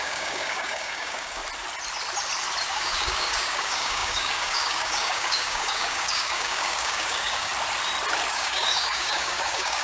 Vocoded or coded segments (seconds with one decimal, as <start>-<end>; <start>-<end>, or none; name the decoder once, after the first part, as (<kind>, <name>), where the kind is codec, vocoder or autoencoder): 0.0-1.4 (codec, DAC); 2.7-7.5; 8.3-9.8